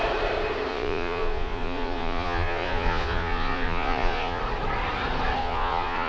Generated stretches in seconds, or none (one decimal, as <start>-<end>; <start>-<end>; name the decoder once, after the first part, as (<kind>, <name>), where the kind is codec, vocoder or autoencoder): 0.7-4.4 (vocoder, Vocos); 5.4-6.1